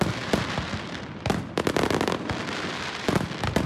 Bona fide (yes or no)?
no